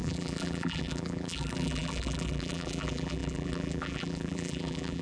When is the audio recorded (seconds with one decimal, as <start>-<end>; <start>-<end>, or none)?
none